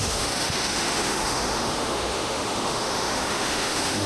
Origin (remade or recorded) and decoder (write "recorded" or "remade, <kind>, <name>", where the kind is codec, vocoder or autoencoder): remade, autoencoder, DAC-VAE